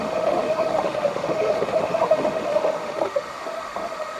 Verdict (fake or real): fake